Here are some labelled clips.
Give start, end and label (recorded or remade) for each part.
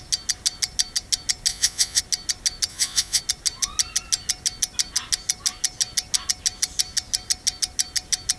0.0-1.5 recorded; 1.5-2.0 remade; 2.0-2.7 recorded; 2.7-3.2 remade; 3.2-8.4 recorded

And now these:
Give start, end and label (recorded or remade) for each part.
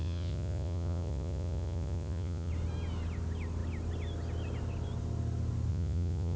0.0-2.5 remade; 2.5-5.7 recorded; 5.7-6.4 remade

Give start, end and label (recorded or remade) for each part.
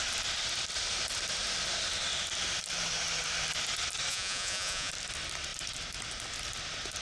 0.0-4.1 recorded; 4.1-4.9 remade; 4.9-7.0 recorded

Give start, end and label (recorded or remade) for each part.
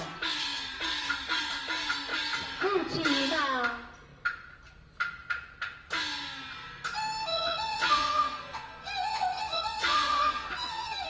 0.0-7.3 recorded; 7.3-11.1 remade